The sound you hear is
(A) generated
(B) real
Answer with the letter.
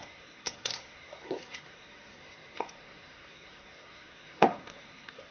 A